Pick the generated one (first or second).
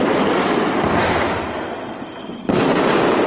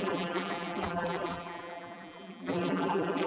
second